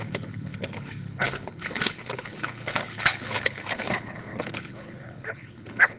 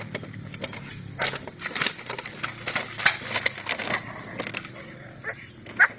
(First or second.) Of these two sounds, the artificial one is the first